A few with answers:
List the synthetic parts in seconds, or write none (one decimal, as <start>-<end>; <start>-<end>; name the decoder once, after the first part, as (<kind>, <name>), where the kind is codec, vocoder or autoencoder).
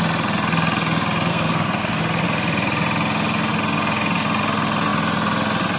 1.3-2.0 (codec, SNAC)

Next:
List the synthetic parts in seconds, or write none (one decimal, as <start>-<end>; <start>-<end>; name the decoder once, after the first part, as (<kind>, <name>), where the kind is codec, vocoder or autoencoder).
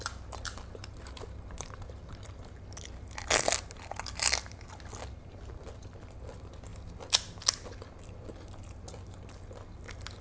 none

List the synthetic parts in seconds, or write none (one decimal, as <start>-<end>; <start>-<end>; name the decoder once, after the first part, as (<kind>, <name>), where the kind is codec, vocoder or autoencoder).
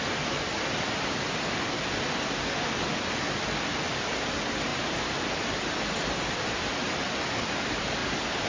none